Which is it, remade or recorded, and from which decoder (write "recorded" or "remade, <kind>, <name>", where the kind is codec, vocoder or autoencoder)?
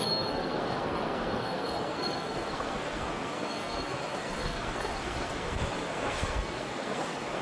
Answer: remade, codec, SNAC